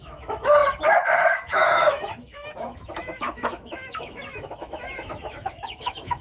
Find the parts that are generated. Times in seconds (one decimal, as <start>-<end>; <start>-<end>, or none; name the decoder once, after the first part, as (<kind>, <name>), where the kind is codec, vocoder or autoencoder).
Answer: 0.0-6.2 (autoencoder, DAC-VAE)